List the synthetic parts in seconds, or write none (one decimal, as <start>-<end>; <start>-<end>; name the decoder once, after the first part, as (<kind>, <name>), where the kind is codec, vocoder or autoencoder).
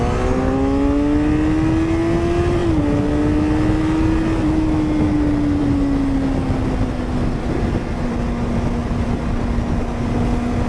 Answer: none